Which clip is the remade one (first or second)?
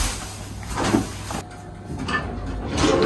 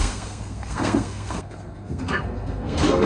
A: second